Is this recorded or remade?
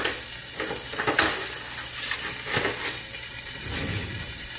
recorded